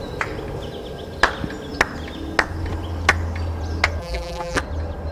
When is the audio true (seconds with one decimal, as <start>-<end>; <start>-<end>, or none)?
0.0-4.0; 4.6-5.1